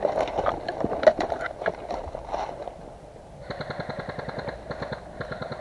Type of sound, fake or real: real